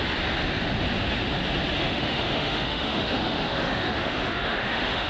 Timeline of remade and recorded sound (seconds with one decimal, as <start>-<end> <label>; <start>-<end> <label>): 0.0-1.8 recorded; 1.8-5.1 remade